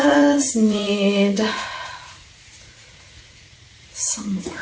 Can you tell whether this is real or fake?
fake